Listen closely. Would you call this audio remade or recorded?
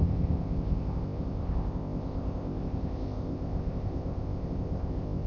remade